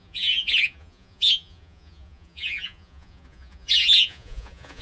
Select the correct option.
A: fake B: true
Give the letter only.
A